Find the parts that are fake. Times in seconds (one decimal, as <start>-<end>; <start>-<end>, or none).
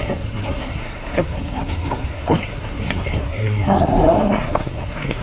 0.0-5.2